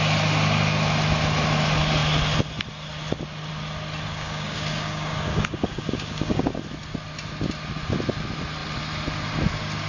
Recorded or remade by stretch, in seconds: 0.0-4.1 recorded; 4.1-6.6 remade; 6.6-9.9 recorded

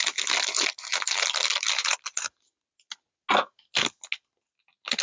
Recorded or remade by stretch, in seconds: 0.0-5.0 recorded

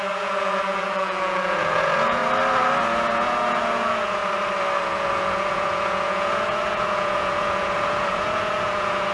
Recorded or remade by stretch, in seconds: 0.0-2.2 remade; 2.2-2.8 recorded; 2.8-4.2 remade; 4.2-4.8 recorded; 4.8-9.1 remade

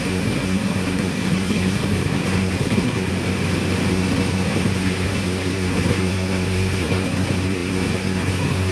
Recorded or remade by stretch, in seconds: 0.0-3.1 remade; 3.1-3.9 recorded; 3.9-8.7 remade

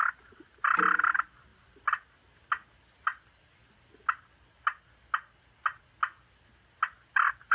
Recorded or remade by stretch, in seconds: 0.0-7.5 recorded